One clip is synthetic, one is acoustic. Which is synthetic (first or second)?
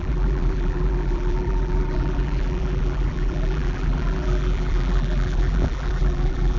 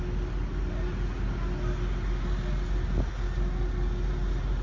first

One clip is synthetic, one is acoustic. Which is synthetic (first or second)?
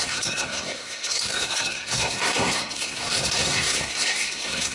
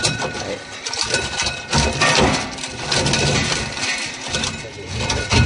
first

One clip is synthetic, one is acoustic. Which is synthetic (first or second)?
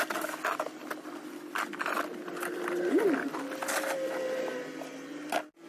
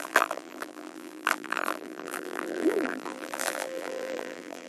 second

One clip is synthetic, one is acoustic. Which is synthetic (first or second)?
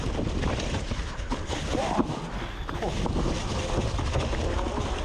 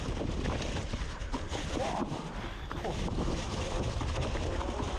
second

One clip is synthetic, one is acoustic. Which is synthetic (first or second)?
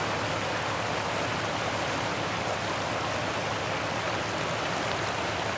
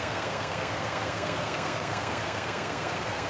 second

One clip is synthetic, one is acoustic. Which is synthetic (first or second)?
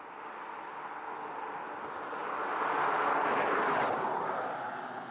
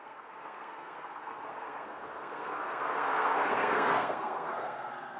second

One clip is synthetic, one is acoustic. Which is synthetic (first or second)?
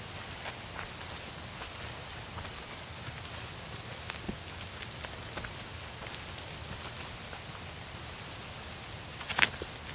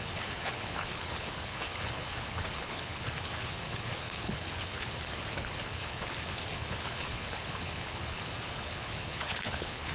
second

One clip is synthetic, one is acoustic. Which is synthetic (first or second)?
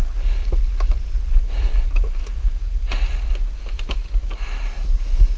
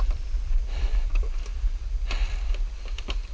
second